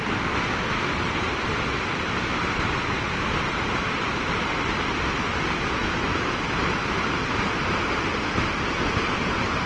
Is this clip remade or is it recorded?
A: recorded